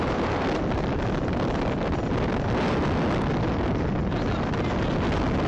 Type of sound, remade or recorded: recorded